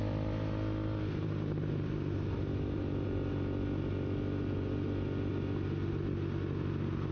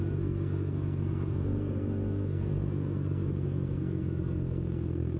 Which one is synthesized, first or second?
second